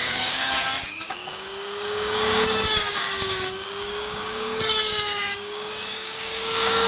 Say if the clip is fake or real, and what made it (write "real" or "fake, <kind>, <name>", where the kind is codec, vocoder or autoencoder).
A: fake, codec, DAC